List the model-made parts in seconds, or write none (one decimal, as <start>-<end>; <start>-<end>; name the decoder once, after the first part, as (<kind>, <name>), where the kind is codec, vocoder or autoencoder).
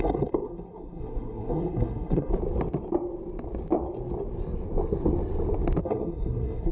0.0-2.3 (codec, SNAC); 5.8-6.7